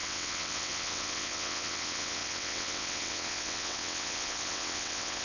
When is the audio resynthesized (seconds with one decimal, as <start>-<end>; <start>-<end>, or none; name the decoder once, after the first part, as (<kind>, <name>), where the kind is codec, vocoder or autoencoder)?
0.0-5.2 (vocoder, WaveNeXt)